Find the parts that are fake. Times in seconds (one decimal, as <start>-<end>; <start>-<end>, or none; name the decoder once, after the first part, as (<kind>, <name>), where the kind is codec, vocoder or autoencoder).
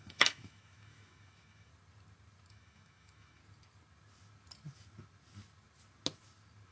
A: 0.0-1.7 (autoencoder, DAC-VAE); 2.5-3.4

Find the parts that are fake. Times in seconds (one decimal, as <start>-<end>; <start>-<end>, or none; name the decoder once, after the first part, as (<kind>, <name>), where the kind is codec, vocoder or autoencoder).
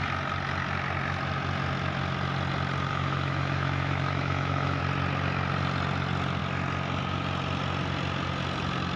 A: 2.9-4.8 (autoencoder, DAC-VAE)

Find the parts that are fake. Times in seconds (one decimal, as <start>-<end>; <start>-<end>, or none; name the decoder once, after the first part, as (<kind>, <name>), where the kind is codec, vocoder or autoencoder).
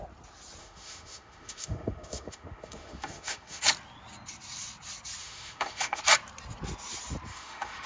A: 0.6-3.6 (autoencoder, DAC-VAE); 5.2-6.0; 7.3-7.9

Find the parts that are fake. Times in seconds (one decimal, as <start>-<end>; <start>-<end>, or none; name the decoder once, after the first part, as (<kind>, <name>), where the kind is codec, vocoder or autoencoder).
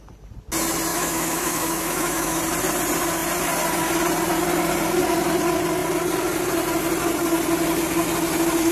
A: 0.9-2.4 (autoencoder, DAC-VAE)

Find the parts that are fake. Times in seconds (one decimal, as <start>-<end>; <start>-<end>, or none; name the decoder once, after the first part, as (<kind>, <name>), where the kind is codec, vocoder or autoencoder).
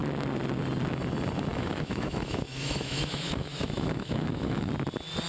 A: 1.5-4.7 (autoencoder, DAC-VAE)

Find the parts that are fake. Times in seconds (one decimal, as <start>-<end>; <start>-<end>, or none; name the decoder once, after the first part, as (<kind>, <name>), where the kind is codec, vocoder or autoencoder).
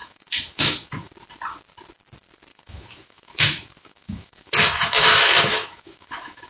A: 0.0-1.1 (autoencoder, DAC-VAE); 2.5-6.5